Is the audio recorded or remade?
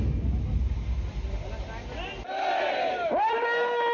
recorded